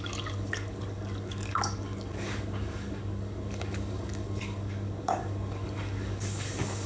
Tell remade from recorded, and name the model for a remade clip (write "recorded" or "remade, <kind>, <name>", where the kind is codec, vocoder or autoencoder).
remade, codec, DAC